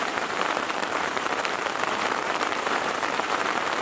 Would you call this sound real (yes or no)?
no